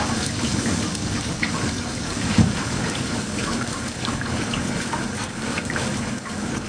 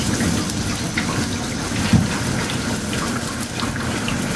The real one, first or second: second